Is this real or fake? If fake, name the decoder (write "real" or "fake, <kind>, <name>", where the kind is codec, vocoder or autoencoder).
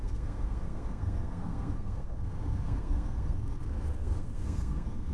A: fake, codec, SNAC